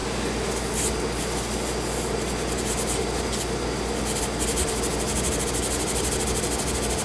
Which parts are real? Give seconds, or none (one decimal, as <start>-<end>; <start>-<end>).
0.0-7.0